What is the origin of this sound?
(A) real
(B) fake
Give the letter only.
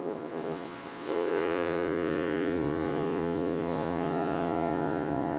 B